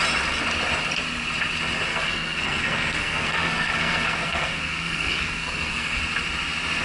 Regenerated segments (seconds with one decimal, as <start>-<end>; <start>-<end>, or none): 1.9-6.0